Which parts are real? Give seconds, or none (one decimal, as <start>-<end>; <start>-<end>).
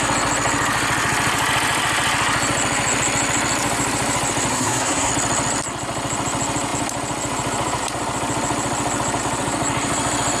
0.0-4.5; 5.1-10.4